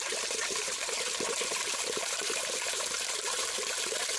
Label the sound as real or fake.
fake